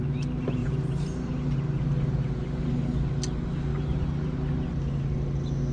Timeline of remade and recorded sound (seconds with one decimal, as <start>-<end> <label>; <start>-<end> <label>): 0.0-0.6 recorded; 0.6-2.7 remade; 2.7-3.7 recorded; 3.7-4.5 remade; 4.5-5.7 recorded